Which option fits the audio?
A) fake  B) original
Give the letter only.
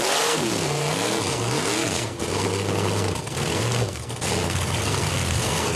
A